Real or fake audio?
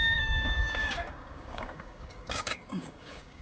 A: fake